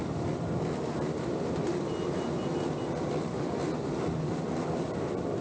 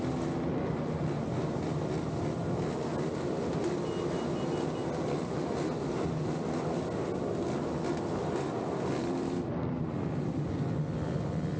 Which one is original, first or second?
second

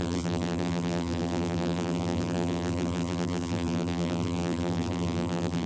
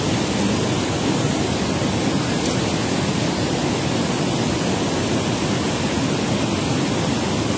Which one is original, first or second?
second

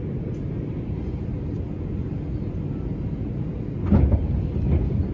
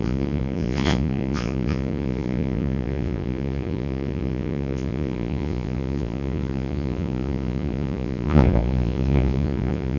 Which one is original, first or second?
first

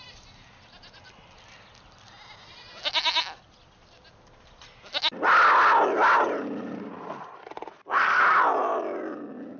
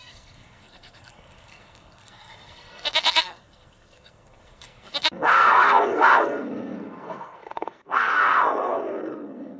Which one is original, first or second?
first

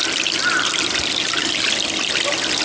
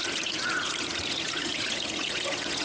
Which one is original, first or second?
first